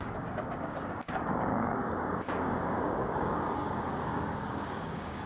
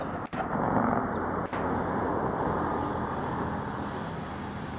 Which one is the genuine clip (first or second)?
second